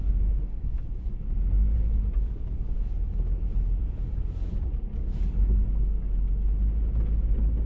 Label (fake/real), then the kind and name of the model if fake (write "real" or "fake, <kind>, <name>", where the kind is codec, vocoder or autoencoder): real